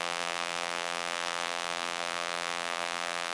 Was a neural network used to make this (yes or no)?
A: yes